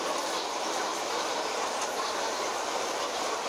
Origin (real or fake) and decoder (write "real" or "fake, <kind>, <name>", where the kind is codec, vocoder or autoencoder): fake, vocoder, BigVGAN v2